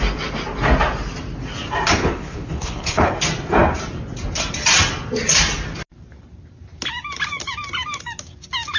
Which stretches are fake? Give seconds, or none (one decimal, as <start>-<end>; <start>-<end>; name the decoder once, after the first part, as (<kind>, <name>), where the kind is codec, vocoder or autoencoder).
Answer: 2.0-3.1 (codec, HILCodec)